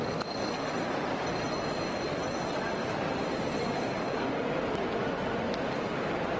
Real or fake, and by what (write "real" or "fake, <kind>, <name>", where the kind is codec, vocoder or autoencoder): real